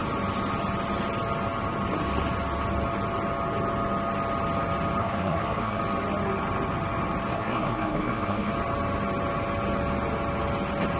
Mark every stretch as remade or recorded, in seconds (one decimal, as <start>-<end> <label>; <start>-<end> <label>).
0.0-5.0 recorded; 5.0-5.8 remade; 5.8-7.3 recorded; 7.3-8.5 remade; 8.5-11.0 recorded